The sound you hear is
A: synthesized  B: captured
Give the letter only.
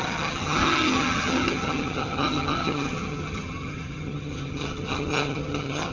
A